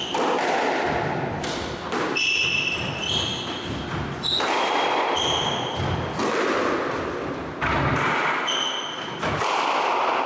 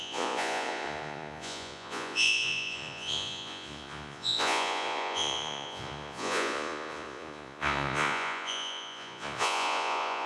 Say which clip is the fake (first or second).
second